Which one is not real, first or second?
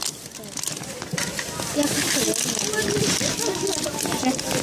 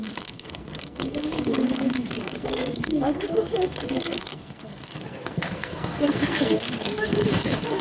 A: second